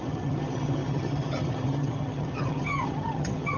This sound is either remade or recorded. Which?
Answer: remade